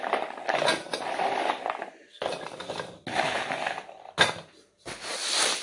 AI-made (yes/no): no